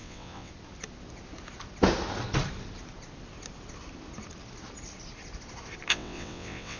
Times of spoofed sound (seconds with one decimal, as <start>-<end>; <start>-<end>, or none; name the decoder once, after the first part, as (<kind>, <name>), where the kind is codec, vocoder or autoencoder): 0.0-0.5 (vocoder, WaveNeXt); 5.9-6.8